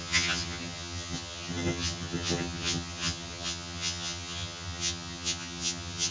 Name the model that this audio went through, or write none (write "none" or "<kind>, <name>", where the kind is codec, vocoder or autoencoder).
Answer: vocoder, HiFi-GAN